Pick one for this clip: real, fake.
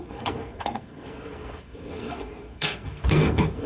fake